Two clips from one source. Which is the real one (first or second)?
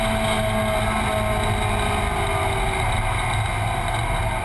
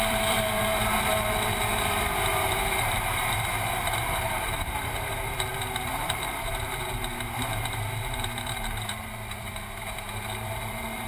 first